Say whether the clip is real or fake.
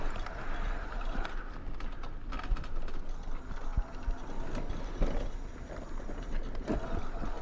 real